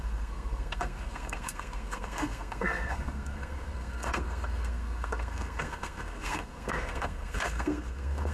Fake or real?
fake